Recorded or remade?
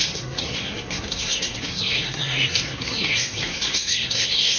remade